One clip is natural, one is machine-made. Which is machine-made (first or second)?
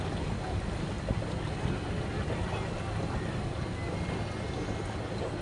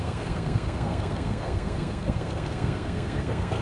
second